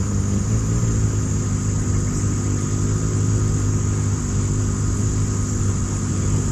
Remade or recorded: recorded